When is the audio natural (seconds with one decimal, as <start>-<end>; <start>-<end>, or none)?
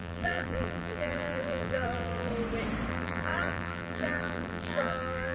2.3-2.9